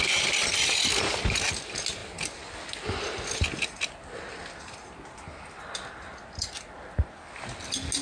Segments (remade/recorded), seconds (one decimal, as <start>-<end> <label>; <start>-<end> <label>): 0.0-8.0 recorded